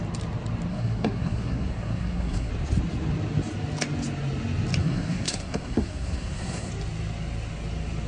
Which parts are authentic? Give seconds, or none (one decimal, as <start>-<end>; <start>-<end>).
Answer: 0.0-0.7; 2.5-4.8; 6.7-8.1